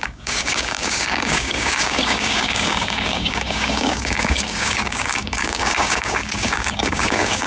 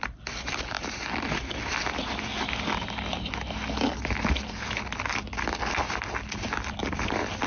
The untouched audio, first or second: second